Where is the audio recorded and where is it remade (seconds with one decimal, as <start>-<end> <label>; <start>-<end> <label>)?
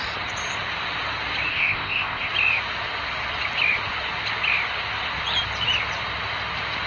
0.0-1.5 recorded; 1.5-2.3 remade; 2.3-6.9 recorded